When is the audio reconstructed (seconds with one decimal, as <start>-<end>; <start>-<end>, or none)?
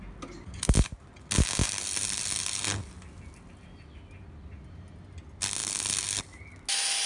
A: none